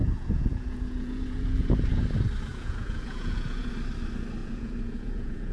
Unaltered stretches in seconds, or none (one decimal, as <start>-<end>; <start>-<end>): 2.0-2.5; 3.7-4.4